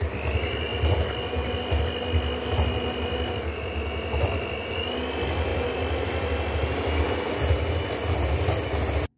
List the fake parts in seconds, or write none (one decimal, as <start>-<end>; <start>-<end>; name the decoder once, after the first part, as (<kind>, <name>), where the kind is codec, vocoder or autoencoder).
none